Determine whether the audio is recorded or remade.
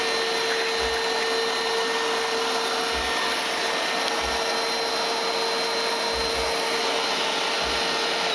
recorded